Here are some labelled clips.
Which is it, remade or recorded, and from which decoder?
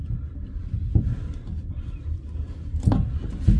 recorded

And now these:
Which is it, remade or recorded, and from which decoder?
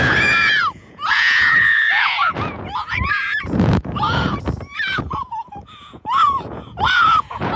remade, vocoder, Vocos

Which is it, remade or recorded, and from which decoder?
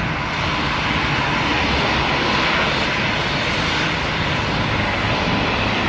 recorded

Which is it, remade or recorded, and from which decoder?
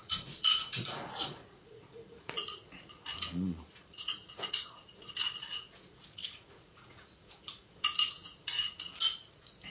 remade, vocoder, Vocos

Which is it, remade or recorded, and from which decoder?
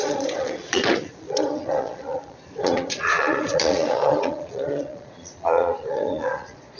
remade, vocoder, Vocos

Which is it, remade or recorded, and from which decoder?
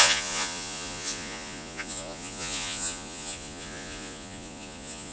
remade, vocoder, Vocos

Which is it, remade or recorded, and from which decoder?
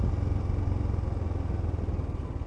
recorded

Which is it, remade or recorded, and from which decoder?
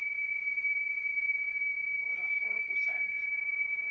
remade, vocoder, Vocos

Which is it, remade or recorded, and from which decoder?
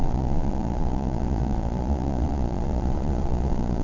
remade, vocoder, Vocos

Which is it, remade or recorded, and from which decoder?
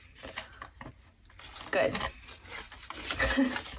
recorded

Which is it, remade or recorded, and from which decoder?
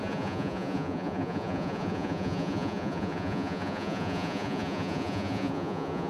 remade, vocoder, Vocos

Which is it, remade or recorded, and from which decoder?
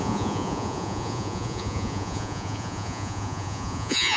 remade, vocoder, Vocos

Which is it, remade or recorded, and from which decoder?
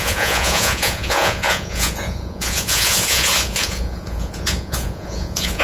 remade, vocoder, Vocos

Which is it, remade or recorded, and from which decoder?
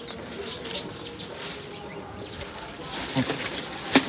recorded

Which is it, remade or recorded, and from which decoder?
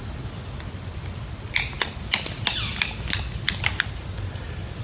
recorded